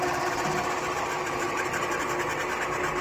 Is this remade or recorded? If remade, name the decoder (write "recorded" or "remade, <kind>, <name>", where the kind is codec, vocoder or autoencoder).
recorded